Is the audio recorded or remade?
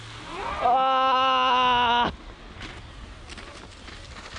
recorded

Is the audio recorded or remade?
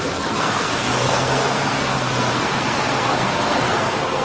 remade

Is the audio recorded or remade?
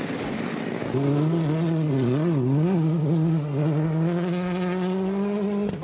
recorded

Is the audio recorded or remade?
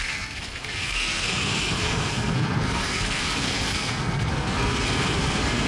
remade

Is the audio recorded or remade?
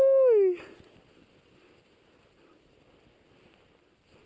recorded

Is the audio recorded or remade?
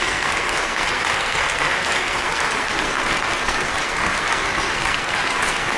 remade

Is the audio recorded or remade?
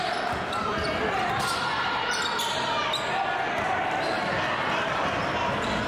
recorded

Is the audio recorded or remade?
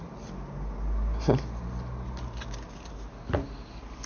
recorded